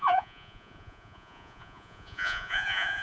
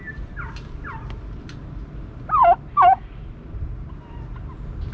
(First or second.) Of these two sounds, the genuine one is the second